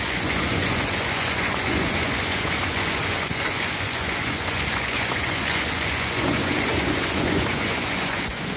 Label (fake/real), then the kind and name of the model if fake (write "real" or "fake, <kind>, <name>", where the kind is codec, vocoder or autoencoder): fake, vocoder, Vocos